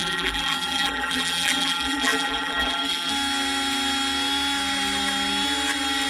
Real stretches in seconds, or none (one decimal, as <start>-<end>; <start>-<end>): 3.1-6.1